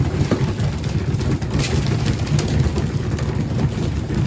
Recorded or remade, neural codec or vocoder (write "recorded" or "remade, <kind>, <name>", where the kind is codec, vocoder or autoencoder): recorded